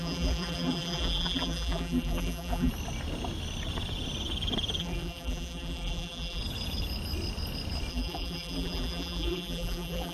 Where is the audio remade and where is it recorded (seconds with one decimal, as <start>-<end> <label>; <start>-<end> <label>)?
0.0-2.7 remade; 2.7-4.8 recorded; 4.8-6.4 remade; 6.4-7.9 recorded; 7.9-10.1 remade